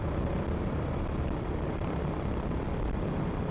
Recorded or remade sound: recorded